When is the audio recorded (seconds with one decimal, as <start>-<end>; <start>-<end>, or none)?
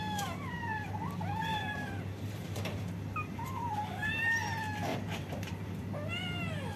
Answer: 0.0-1.5; 2.9-4.9; 5.5-6.8